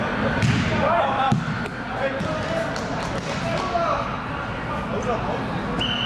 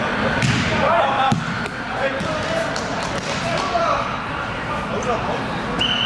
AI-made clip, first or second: second